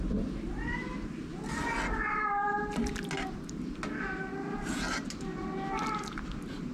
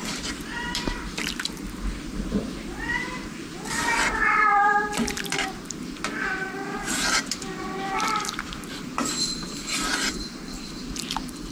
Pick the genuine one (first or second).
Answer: first